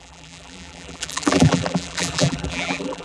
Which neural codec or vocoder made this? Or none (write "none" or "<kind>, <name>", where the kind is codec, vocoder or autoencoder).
vocoder, BigVGAN v2